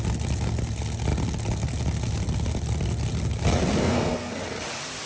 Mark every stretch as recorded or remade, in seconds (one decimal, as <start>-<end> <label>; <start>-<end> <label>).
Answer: 0.0-3.8 recorded; 3.8-4.4 remade; 4.4-5.1 recorded